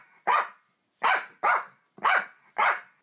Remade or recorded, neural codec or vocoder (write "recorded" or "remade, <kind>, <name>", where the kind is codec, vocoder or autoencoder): recorded